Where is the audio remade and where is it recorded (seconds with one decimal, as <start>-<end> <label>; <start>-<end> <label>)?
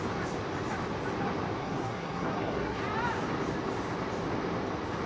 0.0-1.6 recorded; 1.6-2.8 remade; 2.8-5.1 recorded